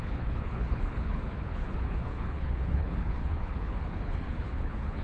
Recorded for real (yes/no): no